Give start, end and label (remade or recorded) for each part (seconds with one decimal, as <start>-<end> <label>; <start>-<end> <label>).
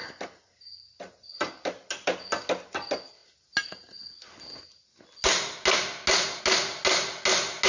0.0-7.7 recorded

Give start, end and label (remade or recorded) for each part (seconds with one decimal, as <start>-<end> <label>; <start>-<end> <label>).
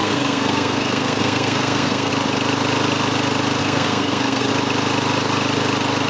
0.0-2.1 remade; 2.1-3.6 recorded; 3.6-4.5 remade; 4.5-6.1 recorded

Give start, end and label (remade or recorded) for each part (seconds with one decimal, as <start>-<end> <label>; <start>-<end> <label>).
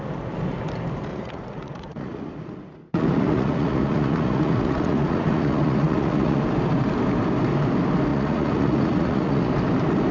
0.0-1.1 recorded; 1.1-6.4 remade; 6.4-8.1 recorded; 8.1-9.5 remade; 9.5-10.1 recorded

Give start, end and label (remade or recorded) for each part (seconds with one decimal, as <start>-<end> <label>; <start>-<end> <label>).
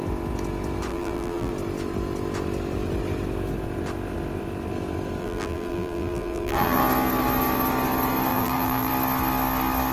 0.0-0.9 recorded; 0.9-1.5 remade; 1.5-5.2 recorded; 5.2-6.8 remade; 6.8-8.3 recorded; 8.3-8.9 remade; 8.9-9.9 recorded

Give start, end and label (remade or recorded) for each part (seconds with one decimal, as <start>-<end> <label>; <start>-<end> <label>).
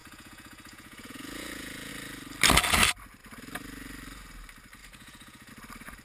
0.0-1.9 remade; 1.9-4.8 recorded; 4.8-5.5 remade; 5.5-6.0 recorded